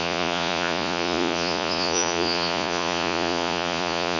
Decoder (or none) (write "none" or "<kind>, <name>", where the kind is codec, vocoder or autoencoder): vocoder, Vocos